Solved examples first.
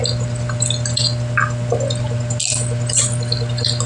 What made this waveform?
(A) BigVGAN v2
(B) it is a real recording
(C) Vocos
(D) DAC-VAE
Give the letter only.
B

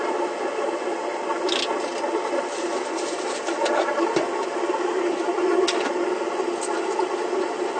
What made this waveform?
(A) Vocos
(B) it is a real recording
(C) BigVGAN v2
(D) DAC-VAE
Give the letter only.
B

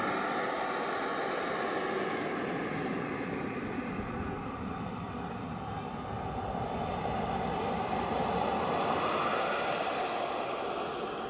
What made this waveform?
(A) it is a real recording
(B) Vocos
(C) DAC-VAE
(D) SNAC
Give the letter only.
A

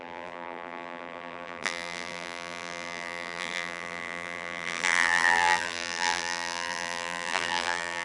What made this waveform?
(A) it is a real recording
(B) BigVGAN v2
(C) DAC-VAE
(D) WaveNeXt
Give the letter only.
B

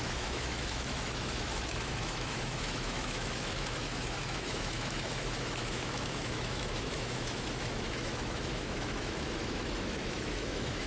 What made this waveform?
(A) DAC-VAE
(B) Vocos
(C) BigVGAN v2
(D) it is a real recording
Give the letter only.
A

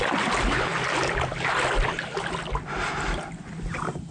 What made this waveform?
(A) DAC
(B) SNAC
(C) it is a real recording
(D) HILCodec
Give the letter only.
C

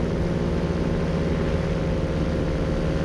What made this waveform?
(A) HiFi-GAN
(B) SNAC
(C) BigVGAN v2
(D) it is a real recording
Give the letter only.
D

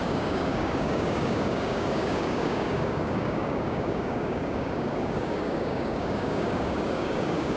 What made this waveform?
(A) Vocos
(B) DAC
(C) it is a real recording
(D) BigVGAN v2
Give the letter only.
B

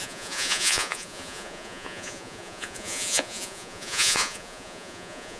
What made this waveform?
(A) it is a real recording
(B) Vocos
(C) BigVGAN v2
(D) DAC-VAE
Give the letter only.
B